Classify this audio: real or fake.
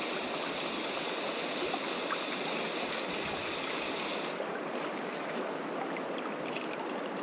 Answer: real